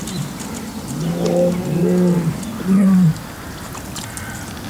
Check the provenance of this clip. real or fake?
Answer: real